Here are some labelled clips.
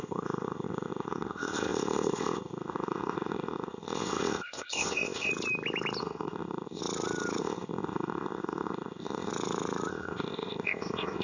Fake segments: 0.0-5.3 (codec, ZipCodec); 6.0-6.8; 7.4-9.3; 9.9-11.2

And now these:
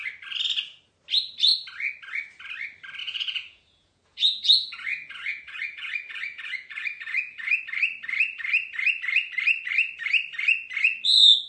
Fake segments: 3.0-7.6 (vocoder, Vocos)

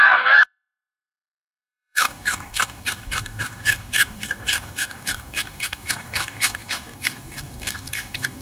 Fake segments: 0.0-8.4 (codec, DAC)